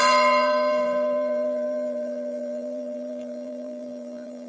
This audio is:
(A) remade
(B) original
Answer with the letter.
A